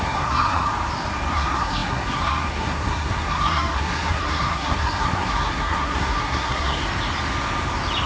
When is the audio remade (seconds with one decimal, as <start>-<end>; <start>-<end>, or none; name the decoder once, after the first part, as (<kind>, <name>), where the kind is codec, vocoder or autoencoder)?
0.0-0.7 (codec, SNAC); 1.3-6.8